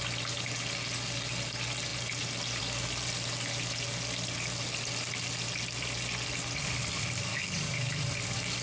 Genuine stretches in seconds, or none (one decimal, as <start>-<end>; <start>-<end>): 0.0-7.3; 7.9-8.6